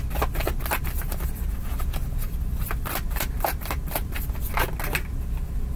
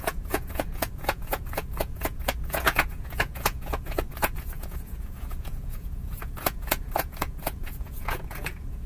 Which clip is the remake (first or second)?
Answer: second